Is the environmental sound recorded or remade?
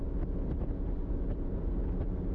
recorded